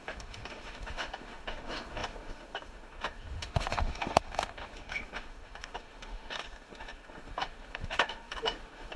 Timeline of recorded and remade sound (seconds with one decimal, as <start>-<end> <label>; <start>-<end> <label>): 0.0-9.0 remade